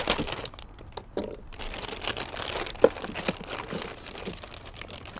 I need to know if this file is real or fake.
real